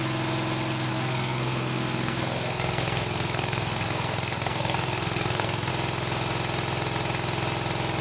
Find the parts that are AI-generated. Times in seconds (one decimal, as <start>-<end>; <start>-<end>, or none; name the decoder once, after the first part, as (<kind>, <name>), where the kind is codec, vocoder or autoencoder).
0.9-5.7 (codec, SNAC)